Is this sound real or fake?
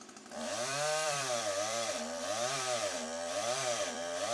fake